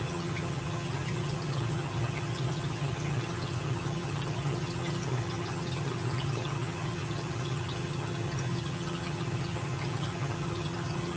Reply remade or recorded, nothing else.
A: remade